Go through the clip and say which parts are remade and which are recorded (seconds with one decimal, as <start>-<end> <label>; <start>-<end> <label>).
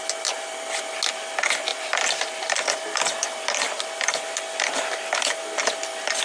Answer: 0.0-1.7 recorded; 1.7-5.4 remade; 5.4-6.2 recorded